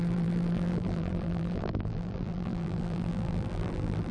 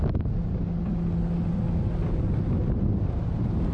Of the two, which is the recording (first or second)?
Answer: second